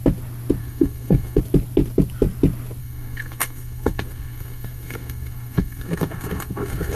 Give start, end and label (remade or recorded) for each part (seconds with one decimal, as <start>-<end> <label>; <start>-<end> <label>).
0.0-0.6 recorded; 0.6-1.4 remade; 1.4-2.8 recorded; 2.8-7.0 remade